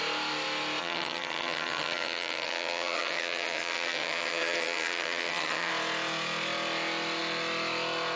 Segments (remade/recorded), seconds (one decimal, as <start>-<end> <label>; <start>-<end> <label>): 0.0-0.8 recorded; 0.8-5.7 remade; 5.7-8.2 recorded